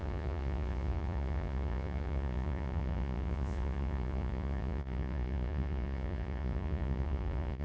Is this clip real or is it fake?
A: fake